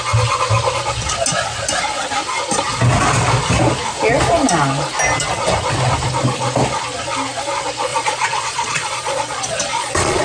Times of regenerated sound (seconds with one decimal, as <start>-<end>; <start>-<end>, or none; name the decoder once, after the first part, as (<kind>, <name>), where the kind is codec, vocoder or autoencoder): 7.9-10.2 (vocoder, Vocos)